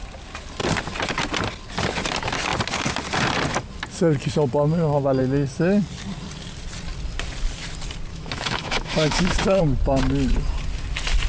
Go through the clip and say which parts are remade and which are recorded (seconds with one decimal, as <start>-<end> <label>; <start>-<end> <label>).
0.0-8.1 recorded; 8.1-9.6 remade; 9.6-11.3 recorded